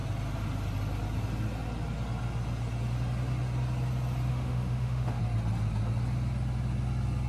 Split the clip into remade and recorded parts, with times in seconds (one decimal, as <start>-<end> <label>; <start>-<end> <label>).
0.0-4.3 recorded; 4.3-5.2 remade; 5.2-7.3 recorded